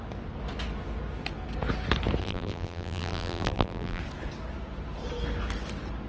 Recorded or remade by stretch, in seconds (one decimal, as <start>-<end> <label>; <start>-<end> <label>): 0.0-2.2 recorded; 2.2-4.0 remade; 4.0-6.1 recorded